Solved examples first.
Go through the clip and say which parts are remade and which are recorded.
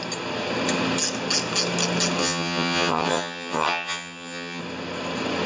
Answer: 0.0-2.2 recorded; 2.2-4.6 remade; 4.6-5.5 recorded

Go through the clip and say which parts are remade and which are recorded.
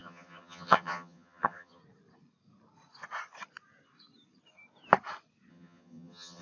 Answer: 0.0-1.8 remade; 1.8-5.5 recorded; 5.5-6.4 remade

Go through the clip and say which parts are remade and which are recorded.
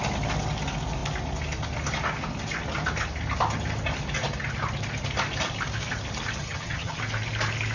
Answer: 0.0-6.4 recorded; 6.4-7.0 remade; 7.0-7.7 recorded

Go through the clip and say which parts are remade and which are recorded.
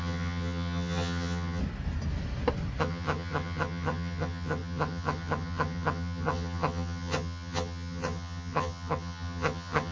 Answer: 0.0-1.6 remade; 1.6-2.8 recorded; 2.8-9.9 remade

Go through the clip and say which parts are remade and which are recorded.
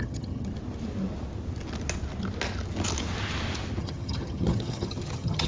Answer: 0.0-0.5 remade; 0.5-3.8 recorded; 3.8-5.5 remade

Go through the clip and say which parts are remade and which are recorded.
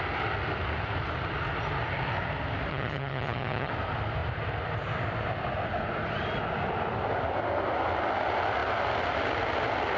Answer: 0.0-2.7 recorded; 2.7-3.7 remade; 3.7-10.0 recorded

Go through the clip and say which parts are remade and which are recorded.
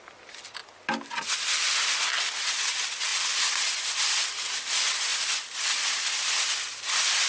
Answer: 0.0-7.3 recorded